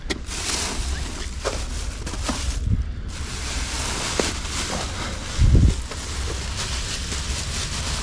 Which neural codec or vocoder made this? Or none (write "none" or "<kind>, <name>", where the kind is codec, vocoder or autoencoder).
none